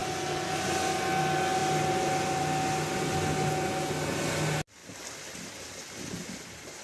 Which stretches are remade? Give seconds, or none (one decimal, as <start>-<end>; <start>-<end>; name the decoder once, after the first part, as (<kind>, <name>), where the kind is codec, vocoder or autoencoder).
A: none